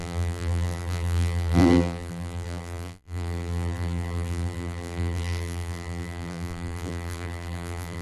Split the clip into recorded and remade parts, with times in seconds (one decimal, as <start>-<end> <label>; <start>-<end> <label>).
0.0-8.0 remade